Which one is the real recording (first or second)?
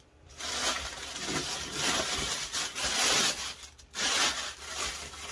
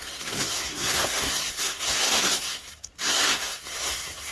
first